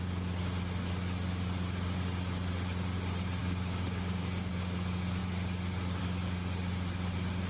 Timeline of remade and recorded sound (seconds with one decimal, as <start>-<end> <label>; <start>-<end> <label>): 0.0-3.4 recorded; 3.4-4.5 remade; 4.5-7.5 recorded